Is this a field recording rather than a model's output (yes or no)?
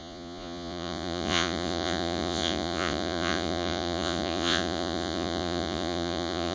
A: no